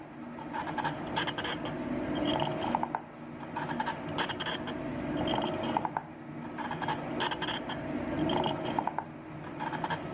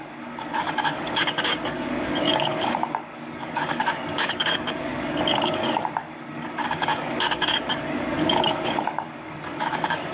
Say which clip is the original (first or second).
first